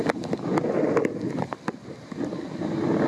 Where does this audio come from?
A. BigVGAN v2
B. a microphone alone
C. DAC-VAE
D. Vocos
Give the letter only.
B